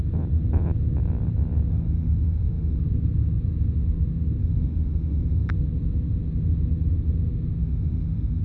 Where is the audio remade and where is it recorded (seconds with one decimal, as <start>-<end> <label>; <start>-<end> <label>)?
0.0-1.7 recorded; 1.7-2.8 remade; 2.8-4.4 recorded; 4.4-5.5 remade; 5.5-7.6 recorded; 7.6-8.4 remade